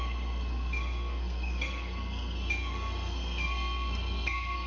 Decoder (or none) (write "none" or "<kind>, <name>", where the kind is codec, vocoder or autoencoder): codec, SNAC